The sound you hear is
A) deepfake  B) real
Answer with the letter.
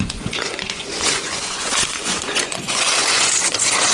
A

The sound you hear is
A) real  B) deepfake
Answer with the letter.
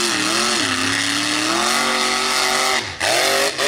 A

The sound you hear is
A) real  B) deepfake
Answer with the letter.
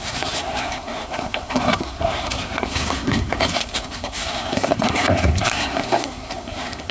B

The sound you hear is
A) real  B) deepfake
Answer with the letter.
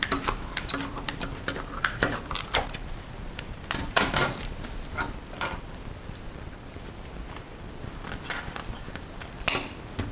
B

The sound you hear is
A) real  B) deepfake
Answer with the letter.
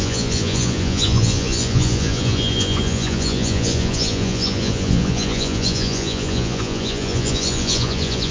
B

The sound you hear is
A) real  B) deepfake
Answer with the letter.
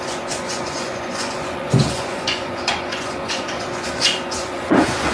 B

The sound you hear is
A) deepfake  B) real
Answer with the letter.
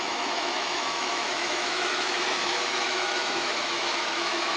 A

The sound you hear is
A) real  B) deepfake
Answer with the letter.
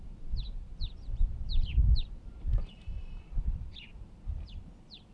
B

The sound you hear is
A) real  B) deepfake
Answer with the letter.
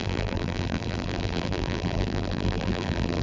B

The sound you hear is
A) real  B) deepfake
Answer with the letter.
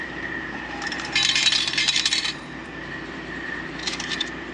B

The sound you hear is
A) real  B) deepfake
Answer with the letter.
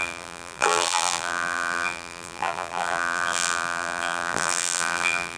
B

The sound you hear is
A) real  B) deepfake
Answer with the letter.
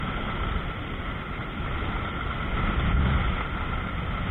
A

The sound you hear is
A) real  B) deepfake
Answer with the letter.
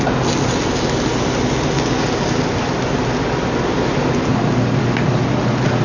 A